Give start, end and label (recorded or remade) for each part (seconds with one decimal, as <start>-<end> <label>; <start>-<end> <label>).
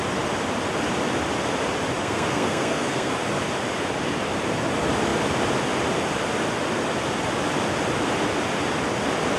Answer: 0.0-2.0 recorded; 2.0-3.1 remade; 3.1-9.4 recorded